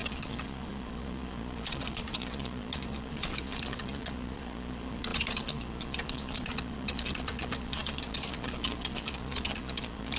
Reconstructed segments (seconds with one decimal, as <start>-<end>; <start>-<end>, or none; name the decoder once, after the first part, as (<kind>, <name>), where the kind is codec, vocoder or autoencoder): 0.0-10.2 (vocoder, Vocos)